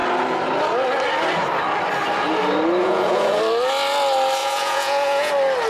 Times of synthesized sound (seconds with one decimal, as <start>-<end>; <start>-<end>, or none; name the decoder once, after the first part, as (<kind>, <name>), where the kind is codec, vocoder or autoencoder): 2.8-3.4 (vocoder, Vocos); 4.4-5.3

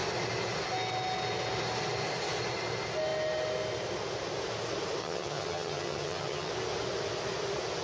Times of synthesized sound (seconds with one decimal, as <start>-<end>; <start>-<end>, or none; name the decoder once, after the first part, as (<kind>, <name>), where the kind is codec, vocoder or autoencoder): 5.0-6.5 (vocoder, HiFi-GAN)

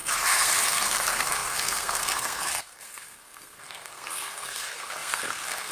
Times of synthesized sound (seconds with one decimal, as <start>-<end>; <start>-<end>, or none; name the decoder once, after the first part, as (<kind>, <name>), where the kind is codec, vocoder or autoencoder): 0.0-5.7 (codec, SNAC)